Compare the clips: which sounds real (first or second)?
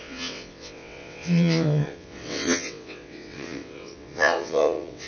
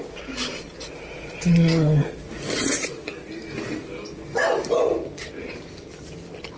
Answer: second